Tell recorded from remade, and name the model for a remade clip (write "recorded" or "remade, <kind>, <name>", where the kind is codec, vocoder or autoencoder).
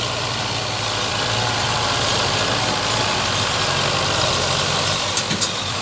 remade, vocoder, BigVGAN v2